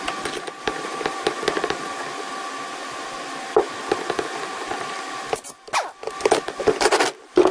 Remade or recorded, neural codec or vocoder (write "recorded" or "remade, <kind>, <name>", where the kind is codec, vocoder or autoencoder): remade, vocoder, BigVGAN v2